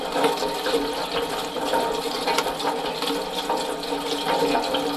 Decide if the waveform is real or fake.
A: real